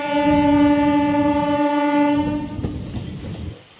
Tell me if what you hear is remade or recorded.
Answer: recorded